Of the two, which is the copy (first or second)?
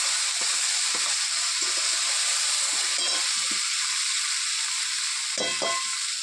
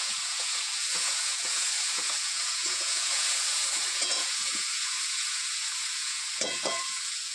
second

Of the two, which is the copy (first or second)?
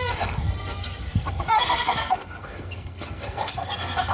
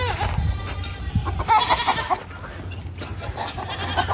first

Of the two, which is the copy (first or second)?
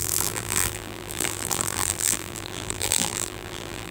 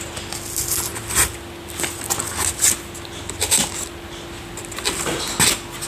first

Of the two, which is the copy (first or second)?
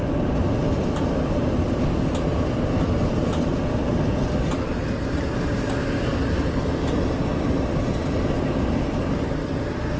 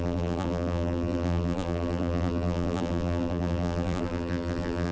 second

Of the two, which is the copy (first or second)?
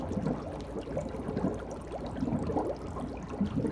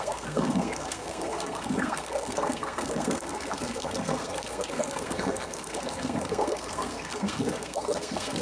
second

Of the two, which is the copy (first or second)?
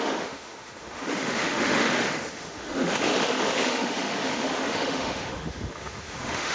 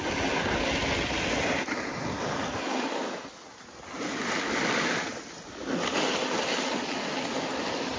first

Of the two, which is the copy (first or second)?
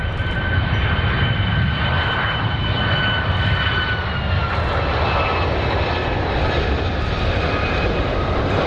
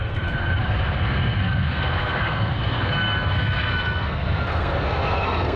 second